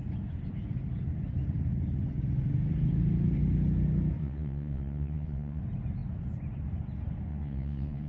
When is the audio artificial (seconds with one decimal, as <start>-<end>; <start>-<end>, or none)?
4.2-5.6; 7.3-8.1